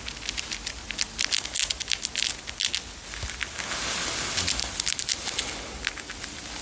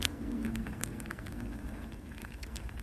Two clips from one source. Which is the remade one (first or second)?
second